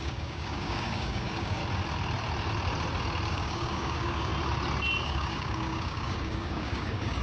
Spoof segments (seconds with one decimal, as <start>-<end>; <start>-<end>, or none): 0.0-1.6; 3.3-4.3; 5.0-7.2